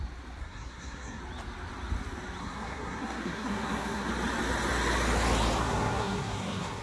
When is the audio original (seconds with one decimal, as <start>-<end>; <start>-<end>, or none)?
0.0-0.4; 1.2-2.4; 4.1-5.6